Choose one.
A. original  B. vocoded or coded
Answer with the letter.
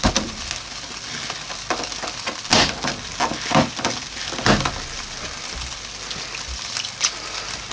A